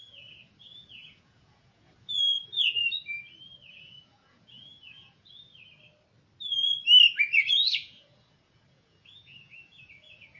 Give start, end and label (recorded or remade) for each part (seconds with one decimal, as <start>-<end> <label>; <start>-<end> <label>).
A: 0.0-2.8 remade; 2.8-3.7 recorded; 3.7-5.5 remade; 5.5-7.2 recorded; 7.2-10.4 remade